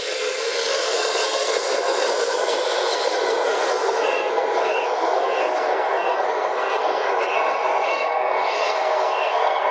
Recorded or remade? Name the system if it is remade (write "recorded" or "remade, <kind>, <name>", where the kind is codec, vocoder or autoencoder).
remade, codec, SNAC